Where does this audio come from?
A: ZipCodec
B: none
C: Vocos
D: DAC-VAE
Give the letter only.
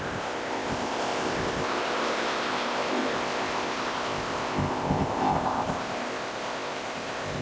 A